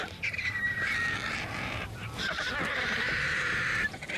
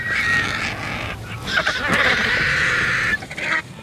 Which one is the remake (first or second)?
first